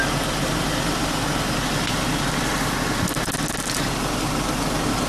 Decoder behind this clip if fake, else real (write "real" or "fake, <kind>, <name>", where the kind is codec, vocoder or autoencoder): real